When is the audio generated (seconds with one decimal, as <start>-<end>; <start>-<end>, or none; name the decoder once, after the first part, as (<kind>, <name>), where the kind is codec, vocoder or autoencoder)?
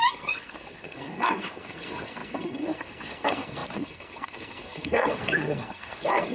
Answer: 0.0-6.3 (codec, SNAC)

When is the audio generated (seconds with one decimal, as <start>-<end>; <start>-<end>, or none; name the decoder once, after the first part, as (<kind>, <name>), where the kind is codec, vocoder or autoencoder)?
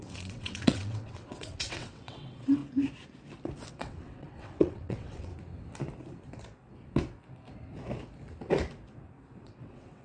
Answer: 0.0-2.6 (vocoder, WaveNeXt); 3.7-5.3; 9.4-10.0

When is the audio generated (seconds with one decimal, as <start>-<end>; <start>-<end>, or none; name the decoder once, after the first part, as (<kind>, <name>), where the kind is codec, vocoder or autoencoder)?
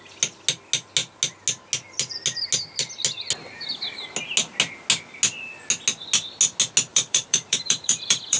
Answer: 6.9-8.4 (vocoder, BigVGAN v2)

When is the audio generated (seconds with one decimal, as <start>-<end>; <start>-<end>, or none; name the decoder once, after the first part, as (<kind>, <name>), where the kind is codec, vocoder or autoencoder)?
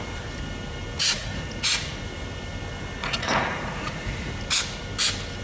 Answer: 1.0-2.0 (vocoder, Vocos); 3.0-4.3